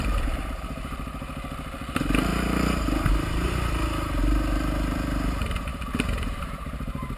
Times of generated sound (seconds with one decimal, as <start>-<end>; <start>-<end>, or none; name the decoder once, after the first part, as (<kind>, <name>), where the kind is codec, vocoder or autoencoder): 0.0-7.2 (vocoder, BigVGAN v2)